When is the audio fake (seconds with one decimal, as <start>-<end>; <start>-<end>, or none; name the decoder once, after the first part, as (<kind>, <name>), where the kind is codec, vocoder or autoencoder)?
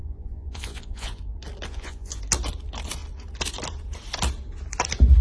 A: 0.0-1.2 (vocoder, Vocos); 1.7-2.2